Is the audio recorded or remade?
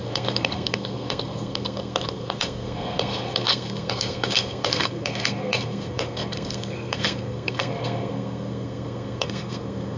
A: remade